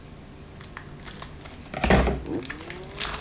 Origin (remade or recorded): recorded